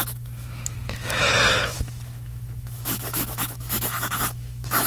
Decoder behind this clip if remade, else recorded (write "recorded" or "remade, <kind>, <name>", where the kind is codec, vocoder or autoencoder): remade, autoencoder, DAC-VAE